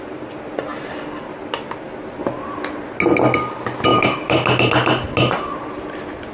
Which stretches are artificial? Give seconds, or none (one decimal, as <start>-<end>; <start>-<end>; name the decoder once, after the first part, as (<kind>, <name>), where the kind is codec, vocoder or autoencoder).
3.9-4.7 (vocoder, BigVGAN v2)